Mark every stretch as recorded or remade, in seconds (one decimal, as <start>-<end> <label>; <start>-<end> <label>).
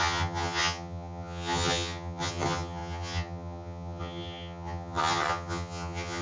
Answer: 0.0-6.2 remade